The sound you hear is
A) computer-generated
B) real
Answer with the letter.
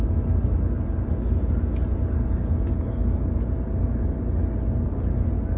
B